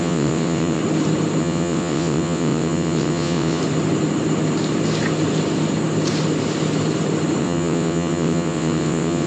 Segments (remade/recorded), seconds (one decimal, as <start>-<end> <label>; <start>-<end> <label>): 0.0-0.8 remade; 0.8-1.4 recorded; 1.4-3.6 remade; 3.6-7.4 recorded; 7.4-9.3 remade